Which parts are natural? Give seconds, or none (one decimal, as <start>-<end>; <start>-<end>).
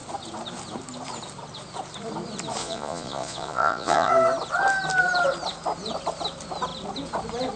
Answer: 0.0-2.6; 4.1-7.6